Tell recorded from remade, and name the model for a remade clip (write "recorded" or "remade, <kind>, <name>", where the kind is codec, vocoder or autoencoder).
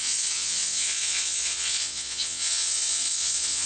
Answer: remade, vocoder, WaveNeXt